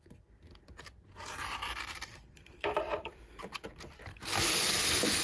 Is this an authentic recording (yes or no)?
no